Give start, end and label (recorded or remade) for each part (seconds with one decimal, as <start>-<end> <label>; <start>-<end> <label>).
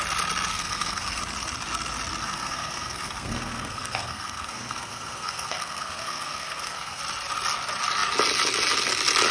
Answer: 0.0-0.5 recorded; 0.5-1.2 remade; 1.2-2.2 recorded; 2.2-7.0 remade; 7.0-9.3 recorded